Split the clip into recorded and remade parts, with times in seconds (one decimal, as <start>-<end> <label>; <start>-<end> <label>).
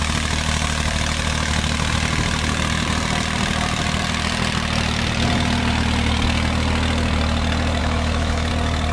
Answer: 0.0-7.8 recorded; 7.8-8.5 remade; 8.5-8.9 recorded